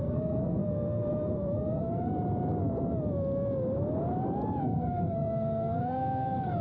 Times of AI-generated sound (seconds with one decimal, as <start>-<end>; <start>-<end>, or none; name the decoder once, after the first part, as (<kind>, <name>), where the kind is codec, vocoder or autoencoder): 0.0-2.1 (codec, SNAC); 4.6-6.6